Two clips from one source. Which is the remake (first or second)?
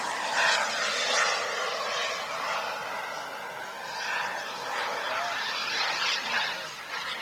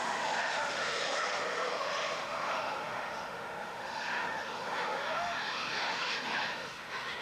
second